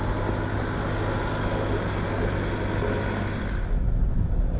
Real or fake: real